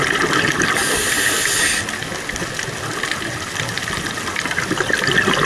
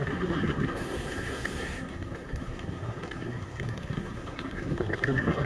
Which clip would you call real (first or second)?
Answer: first